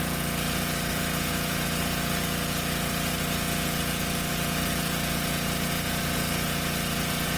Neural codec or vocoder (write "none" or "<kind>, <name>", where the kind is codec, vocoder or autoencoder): vocoder, Vocos